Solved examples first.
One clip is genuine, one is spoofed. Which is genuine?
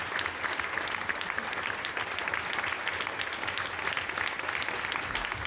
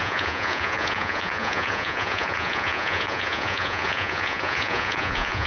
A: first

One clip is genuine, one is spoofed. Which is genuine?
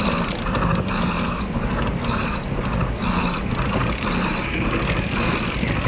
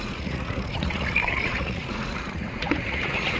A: first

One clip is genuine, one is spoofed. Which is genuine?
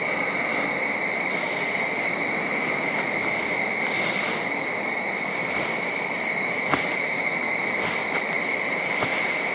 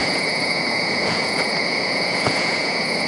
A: first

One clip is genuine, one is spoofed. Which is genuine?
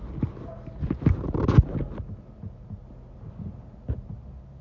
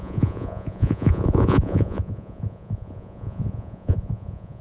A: first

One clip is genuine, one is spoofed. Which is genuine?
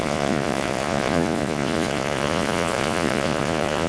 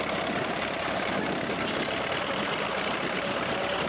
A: second